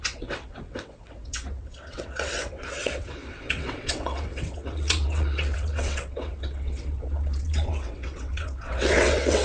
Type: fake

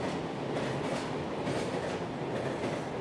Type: real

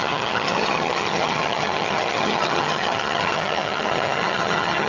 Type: fake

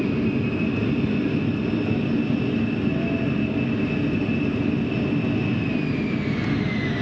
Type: real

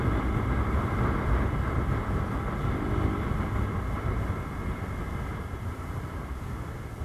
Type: real